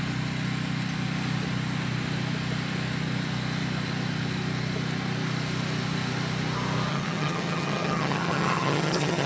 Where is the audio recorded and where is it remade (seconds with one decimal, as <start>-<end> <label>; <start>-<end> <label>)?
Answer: 0.0-6.9 recorded; 6.9-9.3 remade